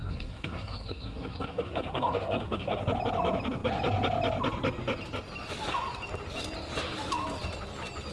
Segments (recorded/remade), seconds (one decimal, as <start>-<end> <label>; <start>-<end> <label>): 0.0-2.8 remade; 2.8-8.1 recorded